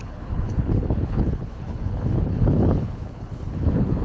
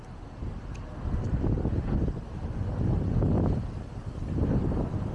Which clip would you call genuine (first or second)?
second